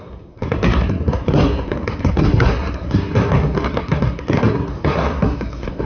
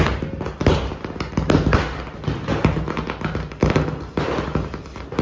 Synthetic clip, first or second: first